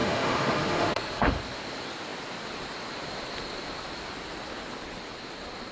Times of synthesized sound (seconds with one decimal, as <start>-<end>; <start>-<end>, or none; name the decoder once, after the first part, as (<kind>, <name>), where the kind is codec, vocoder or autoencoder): 0.0-1.4 (autoencoder, DAC-VAE)